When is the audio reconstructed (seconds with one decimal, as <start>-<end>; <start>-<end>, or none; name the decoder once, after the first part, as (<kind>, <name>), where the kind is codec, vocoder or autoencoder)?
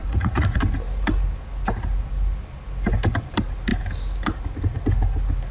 0.0-0.6 (vocoder, Vocos)